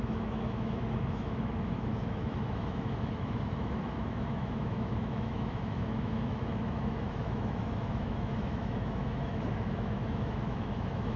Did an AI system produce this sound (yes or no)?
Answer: yes